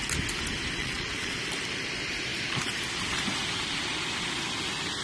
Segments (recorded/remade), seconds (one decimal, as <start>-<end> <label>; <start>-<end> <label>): 0.0-0.8 recorded; 0.8-1.4 remade; 1.4-5.0 recorded